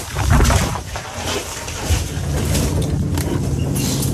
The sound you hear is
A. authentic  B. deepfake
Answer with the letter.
A